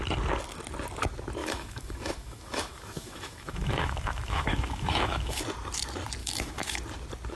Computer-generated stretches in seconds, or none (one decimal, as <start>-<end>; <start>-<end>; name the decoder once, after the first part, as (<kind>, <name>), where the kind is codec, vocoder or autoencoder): 1.4-5.4 (autoencoder, DAC-VAE); 6.2-6.8